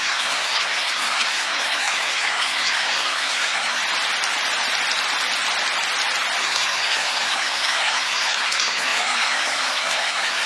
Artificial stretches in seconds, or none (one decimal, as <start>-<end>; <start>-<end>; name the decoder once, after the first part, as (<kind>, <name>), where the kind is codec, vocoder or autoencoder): 0.0-3.8 (codec, SNAC); 6.4-10.5